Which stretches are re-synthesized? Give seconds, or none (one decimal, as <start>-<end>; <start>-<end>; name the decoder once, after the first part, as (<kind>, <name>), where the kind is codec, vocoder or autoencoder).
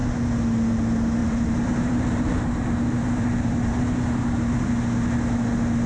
1.2-4.7 (vocoder, BigVGAN v2)